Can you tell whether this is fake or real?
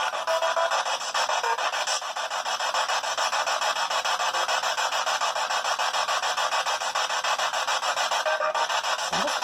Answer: real